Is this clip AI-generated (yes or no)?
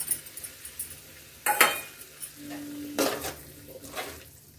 no